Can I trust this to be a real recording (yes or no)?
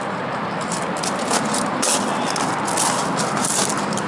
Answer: yes